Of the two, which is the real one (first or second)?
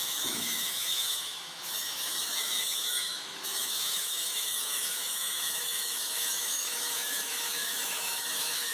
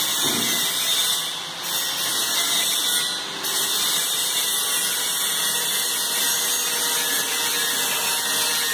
second